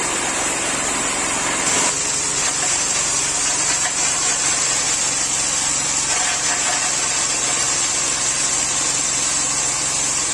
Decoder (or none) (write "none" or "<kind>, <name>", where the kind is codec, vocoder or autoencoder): none